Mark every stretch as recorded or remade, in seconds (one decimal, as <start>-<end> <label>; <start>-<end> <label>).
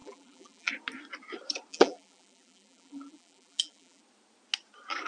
0.0-0.7 remade; 0.7-1.7 recorded; 1.7-4.0 remade; 4.0-5.1 recorded